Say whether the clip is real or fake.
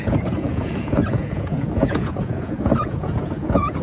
fake